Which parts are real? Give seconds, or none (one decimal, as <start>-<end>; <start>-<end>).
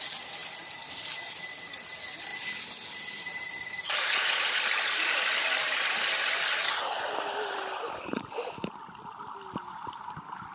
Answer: 0.0-10.5